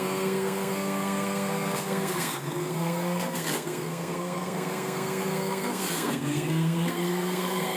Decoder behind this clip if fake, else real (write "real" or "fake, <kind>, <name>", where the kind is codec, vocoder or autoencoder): fake, codec, SNAC